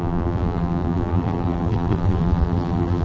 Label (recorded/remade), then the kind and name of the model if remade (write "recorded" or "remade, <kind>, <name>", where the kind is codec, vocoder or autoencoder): remade, vocoder, BigVGAN v2